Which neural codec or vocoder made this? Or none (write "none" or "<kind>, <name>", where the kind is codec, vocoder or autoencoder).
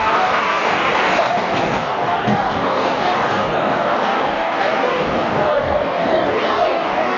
codec, DAC